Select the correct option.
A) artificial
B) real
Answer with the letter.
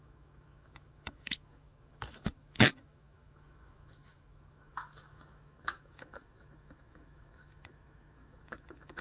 A